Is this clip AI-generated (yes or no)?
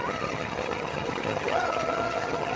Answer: yes